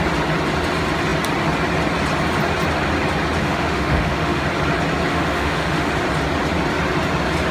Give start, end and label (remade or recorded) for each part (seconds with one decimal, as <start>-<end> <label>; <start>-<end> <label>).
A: 0.0-3.4 recorded; 3.4-4.4 remade; 4.4-5.1 recorded; 5.1-5.9 remade; 5.9-7.5 recorded